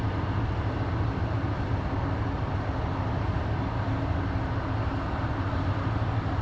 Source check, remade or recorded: recorded